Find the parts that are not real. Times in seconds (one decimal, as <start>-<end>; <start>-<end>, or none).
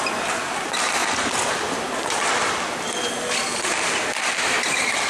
none